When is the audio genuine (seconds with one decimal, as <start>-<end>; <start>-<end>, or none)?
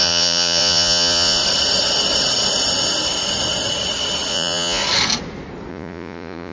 1.4-4.3; 4.8-5.7